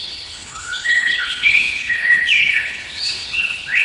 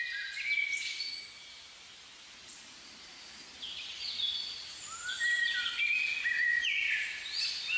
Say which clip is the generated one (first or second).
first